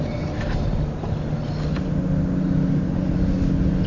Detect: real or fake real